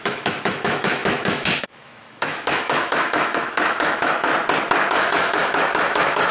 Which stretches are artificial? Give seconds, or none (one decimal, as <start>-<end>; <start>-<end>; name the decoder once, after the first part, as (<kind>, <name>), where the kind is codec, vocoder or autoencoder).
0.0-4.3 (autoencoder, DAC-VAE); 4.9-6.3